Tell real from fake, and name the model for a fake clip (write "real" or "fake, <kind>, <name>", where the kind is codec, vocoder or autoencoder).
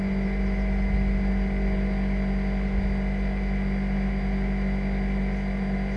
real